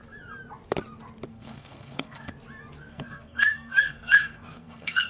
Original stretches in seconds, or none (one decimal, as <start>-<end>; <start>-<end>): 0.0-1.3; 2.3-2.9